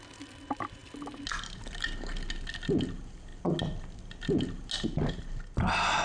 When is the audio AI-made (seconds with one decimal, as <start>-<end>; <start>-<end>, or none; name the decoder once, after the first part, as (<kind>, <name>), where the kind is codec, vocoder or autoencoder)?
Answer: none